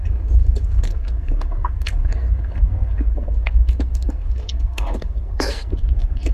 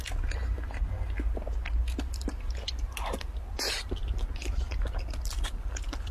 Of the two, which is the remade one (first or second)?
first